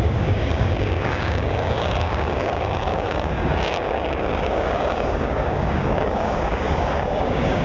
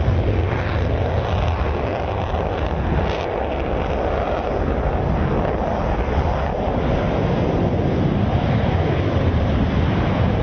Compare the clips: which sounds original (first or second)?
second